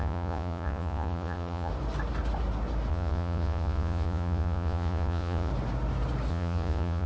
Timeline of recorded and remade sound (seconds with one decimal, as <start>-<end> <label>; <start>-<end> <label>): 0.0-1.7 remade; 1.7-2.9 recorded; 2.9-5.5 remade; 5.5-6.3 recorded; 6.3-7.1 remade